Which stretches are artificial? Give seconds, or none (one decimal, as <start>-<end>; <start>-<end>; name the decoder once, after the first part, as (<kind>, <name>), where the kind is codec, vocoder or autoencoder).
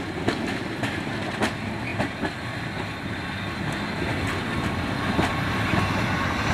none